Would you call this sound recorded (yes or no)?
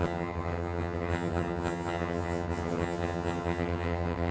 no